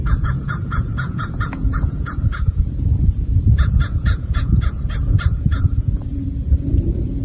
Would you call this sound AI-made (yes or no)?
yes